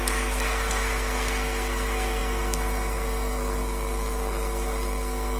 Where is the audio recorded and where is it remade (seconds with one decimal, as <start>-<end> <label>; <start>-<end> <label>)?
0.0-5.4 remade